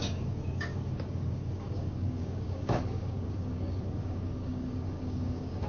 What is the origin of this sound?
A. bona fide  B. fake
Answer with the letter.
B